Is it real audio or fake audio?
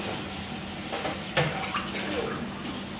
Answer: real